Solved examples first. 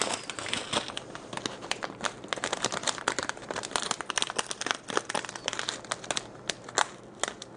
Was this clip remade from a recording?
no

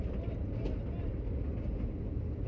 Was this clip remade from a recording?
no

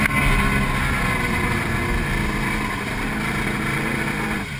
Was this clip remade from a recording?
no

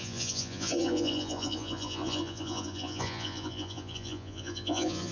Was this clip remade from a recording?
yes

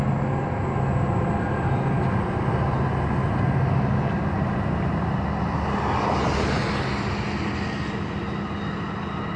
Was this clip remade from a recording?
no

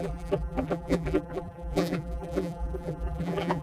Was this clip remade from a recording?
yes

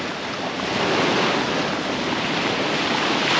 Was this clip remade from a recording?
no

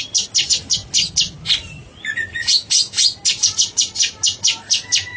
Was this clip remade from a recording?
no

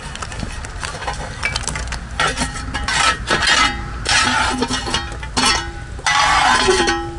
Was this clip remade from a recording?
no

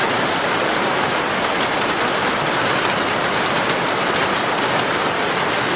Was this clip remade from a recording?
yes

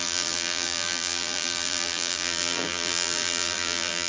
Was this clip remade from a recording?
yes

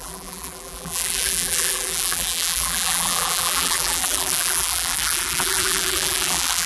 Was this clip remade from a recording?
yes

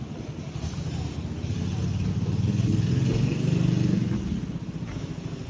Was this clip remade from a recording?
no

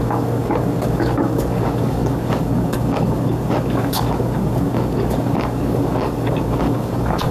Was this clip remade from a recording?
yes